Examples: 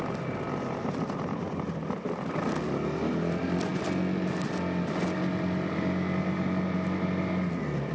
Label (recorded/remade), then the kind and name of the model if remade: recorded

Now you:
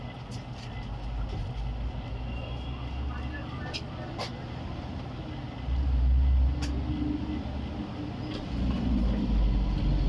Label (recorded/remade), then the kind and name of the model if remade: recorded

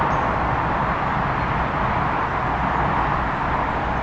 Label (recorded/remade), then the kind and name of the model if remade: recorded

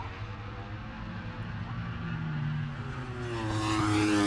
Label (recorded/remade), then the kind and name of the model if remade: recorded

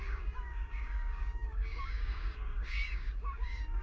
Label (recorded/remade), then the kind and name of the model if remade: remade, codec, DAC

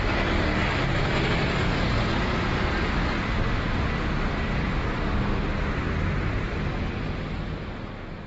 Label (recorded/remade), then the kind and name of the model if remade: recorded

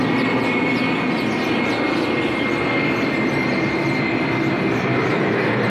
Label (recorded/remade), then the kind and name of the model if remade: recorded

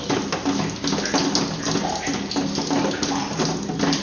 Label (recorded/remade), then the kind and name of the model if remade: recorded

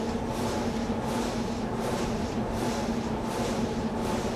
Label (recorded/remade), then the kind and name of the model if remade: recorded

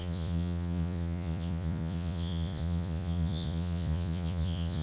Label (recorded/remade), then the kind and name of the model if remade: remade, vocoder, Vocos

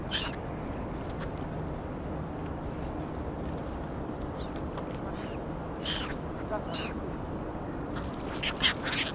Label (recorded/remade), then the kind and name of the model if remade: recorded